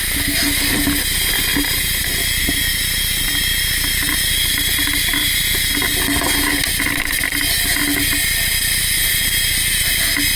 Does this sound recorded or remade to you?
recorded